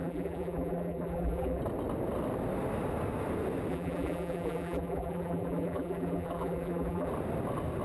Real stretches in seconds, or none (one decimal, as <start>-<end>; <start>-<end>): 1.6-3.7; 7.1-7.8